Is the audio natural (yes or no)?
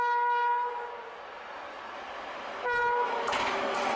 yes